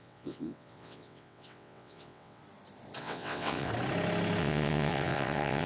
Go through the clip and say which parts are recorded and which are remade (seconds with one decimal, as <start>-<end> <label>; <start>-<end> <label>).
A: 0.0-2.4 remade; 2.4-3.0 recorded; 3.0-3.7 remade; 3.7-4.4 recorded; 4.4-5.7 remade